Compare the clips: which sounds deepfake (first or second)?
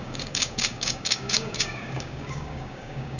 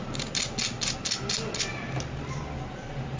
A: first